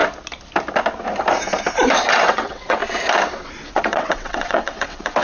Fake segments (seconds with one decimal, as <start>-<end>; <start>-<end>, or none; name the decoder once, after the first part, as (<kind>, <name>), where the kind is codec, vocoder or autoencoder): 2.1-2.8 (vocoder, WaveNeXt); 3.7-5.2